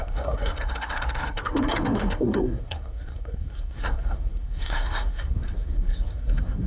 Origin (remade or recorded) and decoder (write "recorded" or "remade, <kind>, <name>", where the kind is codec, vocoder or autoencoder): remade, codec, SNAC